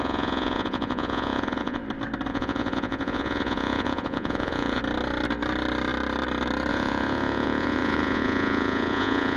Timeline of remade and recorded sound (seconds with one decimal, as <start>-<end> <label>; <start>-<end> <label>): 0.0-1.8 remade; 1.8-2.3 recorded; 2.3-4.8 remade; 4.8-6.7 recorded; 6.7-9.4 remade